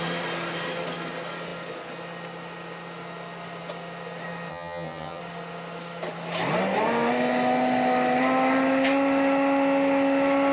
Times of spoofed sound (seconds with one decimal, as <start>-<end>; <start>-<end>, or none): 4.5-5.2